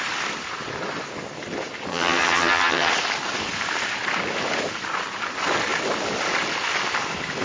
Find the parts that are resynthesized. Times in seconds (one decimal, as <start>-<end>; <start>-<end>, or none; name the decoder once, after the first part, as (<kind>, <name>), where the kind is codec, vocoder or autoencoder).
1.9-2.9 (vocoder, HiFi-GAN)